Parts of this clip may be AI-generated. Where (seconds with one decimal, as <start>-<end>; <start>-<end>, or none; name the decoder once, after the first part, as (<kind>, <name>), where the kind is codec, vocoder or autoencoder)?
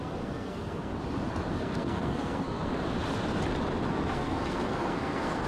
0.0-0.9 (codec, SNAC); 1.5-2.7; 3.9-5.5